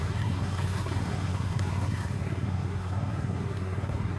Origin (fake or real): fake